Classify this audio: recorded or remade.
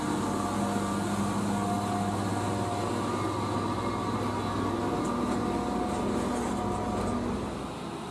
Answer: recorded